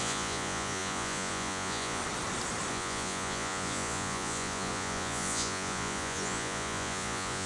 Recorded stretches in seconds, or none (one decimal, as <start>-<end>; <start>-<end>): 2.0-2.7